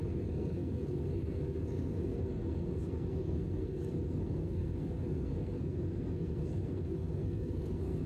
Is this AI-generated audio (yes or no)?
yes